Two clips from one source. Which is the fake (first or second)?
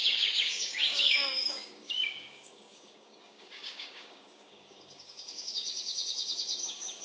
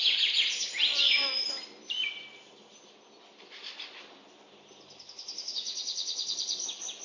first